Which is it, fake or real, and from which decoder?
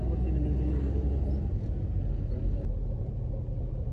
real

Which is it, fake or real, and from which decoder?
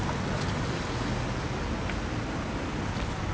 real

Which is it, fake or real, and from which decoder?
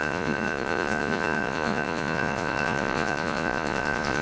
fake, vocoder, Vocos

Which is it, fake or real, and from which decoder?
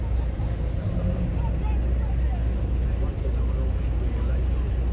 real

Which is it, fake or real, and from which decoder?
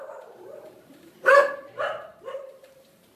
fake, vocoder, BigVGAN v2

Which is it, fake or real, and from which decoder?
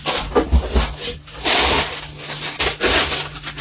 real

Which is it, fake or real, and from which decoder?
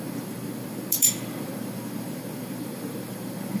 fake, vocoder, BigVGAN v2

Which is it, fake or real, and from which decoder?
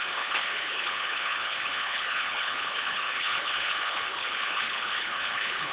fake, codec, HILCodec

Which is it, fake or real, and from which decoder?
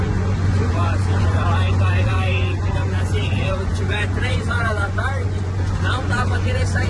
fake, vocoder, Vocos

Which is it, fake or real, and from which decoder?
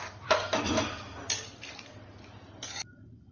real